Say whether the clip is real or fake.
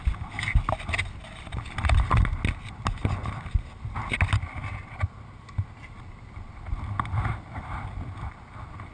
real